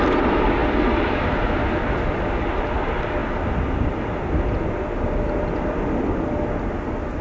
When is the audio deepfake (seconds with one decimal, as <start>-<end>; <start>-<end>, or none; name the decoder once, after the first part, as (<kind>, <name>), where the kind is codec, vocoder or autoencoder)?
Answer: none

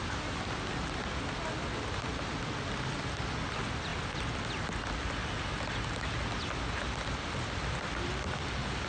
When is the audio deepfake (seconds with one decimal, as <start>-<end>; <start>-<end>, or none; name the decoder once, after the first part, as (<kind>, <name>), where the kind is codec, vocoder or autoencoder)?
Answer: none